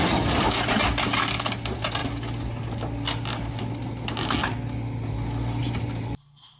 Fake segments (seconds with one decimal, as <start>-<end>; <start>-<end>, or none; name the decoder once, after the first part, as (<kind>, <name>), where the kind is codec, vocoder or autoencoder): 5.6-6.6 (vocoder, BigVGAN v2)